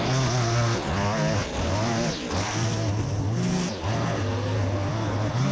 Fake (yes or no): no